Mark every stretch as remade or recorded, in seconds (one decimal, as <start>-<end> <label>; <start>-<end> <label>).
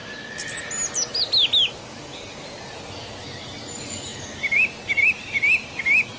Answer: 0.0-6.2 recorded